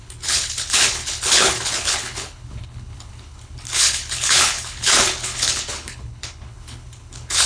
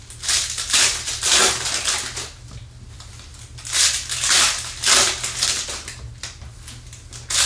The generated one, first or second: first